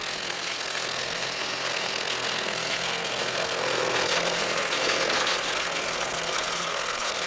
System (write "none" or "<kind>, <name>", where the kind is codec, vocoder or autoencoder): codec, SNAC